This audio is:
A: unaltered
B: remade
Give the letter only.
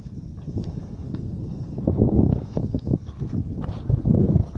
B